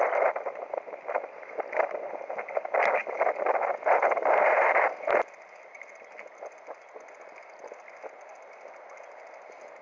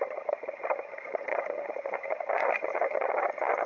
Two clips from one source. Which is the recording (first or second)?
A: first